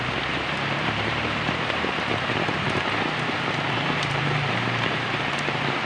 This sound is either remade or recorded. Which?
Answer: remade